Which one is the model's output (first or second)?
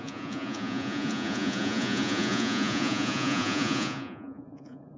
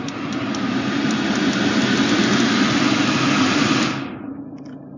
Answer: first